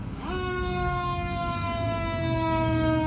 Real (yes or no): no